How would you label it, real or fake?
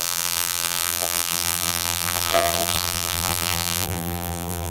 fake